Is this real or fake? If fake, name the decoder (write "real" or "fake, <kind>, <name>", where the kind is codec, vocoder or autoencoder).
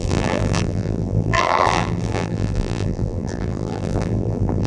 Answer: fake, vocoder, BigVGAN v2